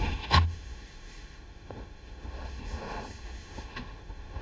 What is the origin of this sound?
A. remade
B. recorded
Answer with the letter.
A